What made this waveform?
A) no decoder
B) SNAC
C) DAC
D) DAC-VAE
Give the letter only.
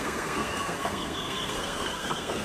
B